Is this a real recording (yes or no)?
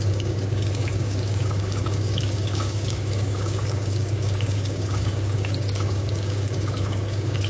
no